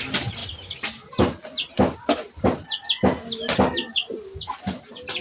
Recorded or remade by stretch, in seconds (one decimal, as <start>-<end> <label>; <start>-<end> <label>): 0.0-5.2 recorded